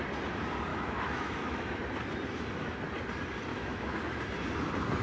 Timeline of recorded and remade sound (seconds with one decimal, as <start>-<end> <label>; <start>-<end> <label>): 0.0-0.7 recorded; 0.7-1.8 remade; 1.8-3.5 recorded; 3.5-4.2 remade; 4.2-5.0 recorded